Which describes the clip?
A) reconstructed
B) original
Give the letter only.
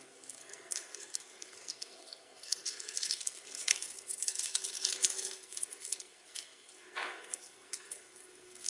A